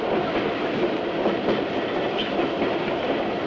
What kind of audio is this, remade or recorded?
recorded